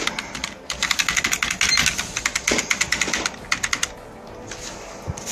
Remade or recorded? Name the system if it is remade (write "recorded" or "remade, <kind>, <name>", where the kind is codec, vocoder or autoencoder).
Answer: recorded